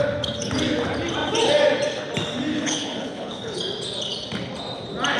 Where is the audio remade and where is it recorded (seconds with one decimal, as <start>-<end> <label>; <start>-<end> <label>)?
0.0-2.5 recorded; 2.5-3.6 remade; 3.6-5.2 recorded